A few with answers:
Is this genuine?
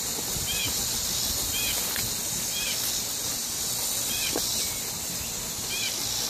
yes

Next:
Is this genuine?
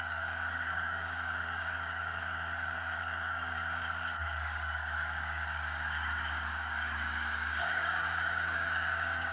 no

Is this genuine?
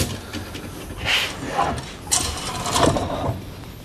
yes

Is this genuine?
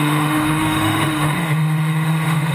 no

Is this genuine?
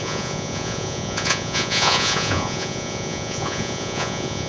no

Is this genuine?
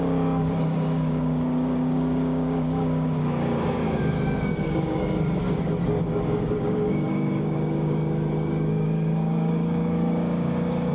no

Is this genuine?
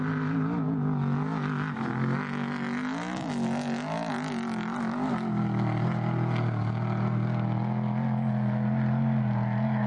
yes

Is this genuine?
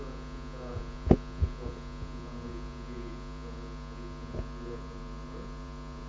no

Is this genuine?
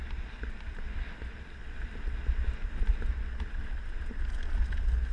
yes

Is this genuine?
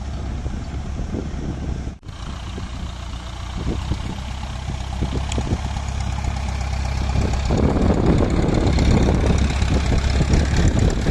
yes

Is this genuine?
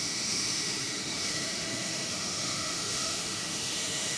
no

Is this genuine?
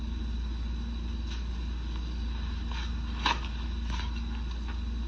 yes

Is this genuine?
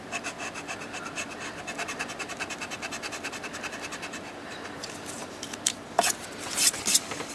no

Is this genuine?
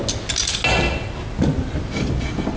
yes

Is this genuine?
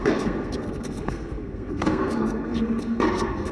no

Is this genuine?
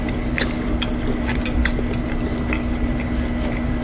yes